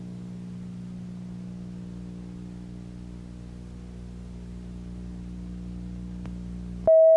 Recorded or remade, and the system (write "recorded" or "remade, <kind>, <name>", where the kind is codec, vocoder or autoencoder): recorded